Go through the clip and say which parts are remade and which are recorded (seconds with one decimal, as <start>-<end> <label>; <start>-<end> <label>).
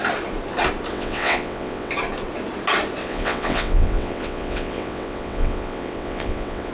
0.0-0.9 recorded; 0.9-1.9 remade; 1.9-3.0 recorded; 3.0-6.7 remade